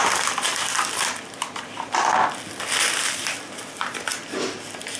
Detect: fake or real real